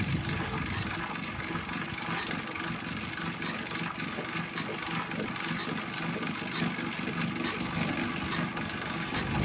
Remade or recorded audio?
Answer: recorded